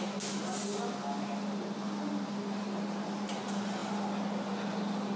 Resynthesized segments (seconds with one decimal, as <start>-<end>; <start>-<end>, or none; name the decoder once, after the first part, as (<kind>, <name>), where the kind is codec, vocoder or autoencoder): none